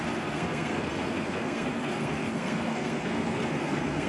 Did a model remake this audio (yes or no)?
yes